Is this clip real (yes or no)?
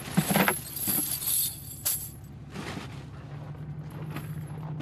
yes